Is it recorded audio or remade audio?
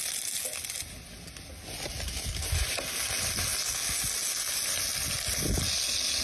recorded